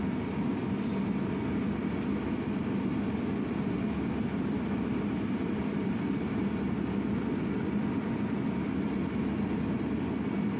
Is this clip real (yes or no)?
yes